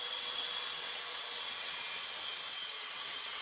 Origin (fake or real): fake